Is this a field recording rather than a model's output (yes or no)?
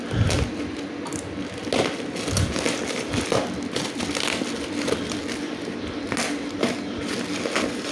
yes